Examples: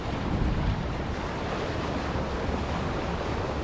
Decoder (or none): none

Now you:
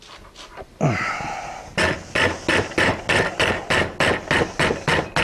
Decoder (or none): none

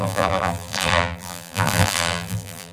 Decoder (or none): vocoder, BigVGAN v2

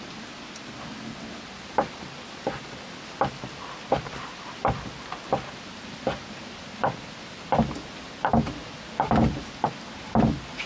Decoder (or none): none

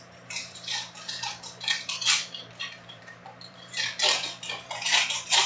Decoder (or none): vocoder, BigVGAN v2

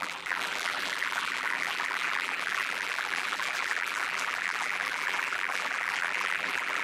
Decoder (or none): vocoder, BigVGAN v2